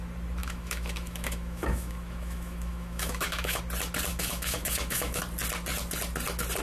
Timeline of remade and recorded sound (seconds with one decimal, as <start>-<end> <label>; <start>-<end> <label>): 0.0-0.4 recorded; 0.4-3.6 remade; 3.6-4.1 recorded; 4.1-5.2 remade; 5.2-6.6 recorded